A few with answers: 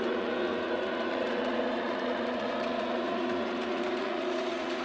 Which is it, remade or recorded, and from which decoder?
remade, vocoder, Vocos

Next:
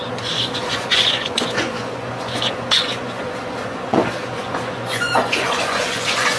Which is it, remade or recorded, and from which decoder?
remade, vocoder, Vocos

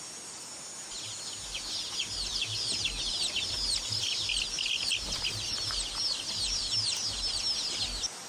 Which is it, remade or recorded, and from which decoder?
recorded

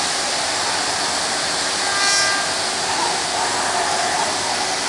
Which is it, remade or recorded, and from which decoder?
recorded